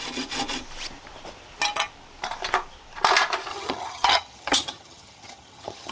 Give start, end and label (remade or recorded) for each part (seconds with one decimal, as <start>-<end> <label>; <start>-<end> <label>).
0.0-3.5 recorded; 3.5-5.9 remade